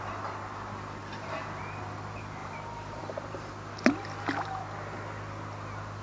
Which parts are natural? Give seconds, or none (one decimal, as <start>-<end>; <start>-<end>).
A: 0.0-1.0; 1.6-2.4; 3.0-6.0